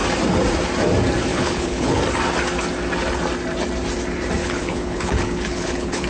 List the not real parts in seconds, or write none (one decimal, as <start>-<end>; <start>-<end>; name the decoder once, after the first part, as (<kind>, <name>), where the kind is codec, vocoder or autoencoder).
1.3-2.0 (codec, HILCodec); 4.4-6.1